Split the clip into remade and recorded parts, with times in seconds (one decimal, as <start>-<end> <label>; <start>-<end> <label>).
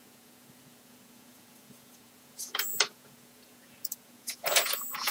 0.0-5.1 remade